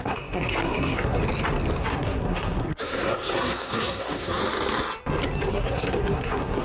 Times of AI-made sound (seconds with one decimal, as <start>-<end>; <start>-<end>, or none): 0.0-1.2; 1.8-4.4; 5.5-6.6